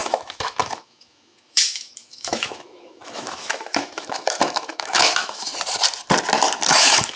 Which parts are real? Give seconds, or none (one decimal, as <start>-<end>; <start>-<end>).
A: 5.5-6.7